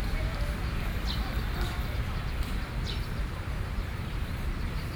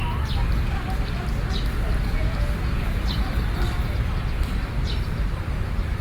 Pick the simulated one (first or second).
first